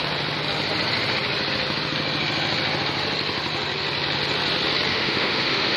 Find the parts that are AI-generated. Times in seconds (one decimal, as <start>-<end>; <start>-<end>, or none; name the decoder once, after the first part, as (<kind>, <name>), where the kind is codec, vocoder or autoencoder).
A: 4.9-5.8 (autoencoder, DAC-VAE)